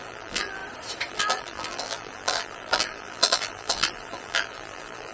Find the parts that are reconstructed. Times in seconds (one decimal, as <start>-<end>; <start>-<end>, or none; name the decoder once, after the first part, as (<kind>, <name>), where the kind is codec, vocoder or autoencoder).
0.0-0.6 (vocoder, BigVGAN v2); 1.1-5.1